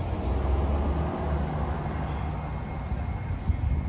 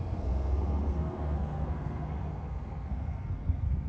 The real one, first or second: first